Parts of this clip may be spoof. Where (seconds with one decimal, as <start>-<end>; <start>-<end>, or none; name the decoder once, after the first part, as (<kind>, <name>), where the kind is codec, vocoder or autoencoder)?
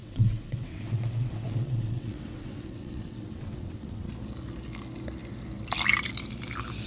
0.0-4.1 (vocoder, WaveNeXt)